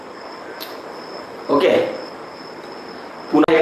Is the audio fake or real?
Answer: real